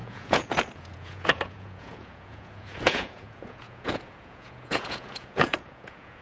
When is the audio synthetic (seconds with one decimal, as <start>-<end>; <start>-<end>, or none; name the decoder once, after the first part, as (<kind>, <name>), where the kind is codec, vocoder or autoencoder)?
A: 0.0-6.2 (vocoder, Vocos)